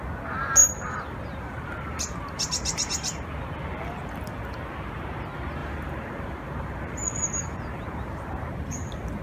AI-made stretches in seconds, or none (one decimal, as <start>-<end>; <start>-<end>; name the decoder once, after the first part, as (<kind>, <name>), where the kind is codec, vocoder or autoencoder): 0.6-3.3 (vocoder, BigVGAN v2); 5.6-8.4